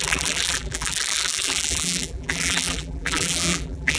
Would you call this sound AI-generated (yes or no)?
yes